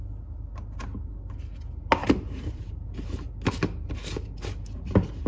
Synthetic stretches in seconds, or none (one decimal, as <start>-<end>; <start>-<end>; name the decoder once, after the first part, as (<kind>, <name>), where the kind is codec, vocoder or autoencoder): 2.0-2.6 (vocoder, BigVGAN v2)